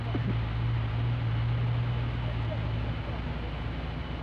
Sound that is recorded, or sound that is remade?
recorded